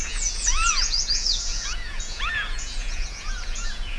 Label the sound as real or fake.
fake